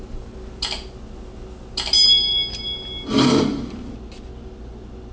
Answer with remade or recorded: recorded